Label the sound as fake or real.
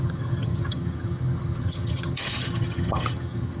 fake